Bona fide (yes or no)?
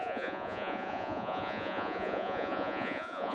no